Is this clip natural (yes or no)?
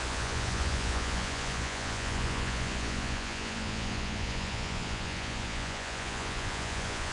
no